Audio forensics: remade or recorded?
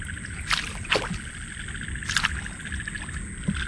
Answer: recorded